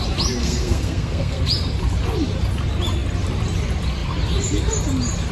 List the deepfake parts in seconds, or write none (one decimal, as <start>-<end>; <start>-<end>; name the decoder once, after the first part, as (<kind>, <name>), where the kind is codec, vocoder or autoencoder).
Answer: 0.4-1.4 (codec, SNAC)